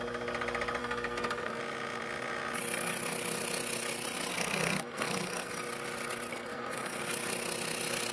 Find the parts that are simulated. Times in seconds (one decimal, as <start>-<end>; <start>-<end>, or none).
0.8-1.6; 4.3-5.5; 6.3-7.0